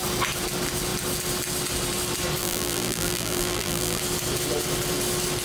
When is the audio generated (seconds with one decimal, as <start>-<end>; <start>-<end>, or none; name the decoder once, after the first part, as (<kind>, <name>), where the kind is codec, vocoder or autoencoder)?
2.4-4.0 (vocoder, BigVGAN v2)